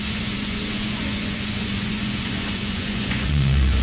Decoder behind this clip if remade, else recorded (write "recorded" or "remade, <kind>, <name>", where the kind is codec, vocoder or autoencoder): remade, vocoder, Vocos